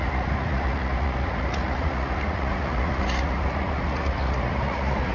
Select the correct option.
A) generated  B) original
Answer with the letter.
A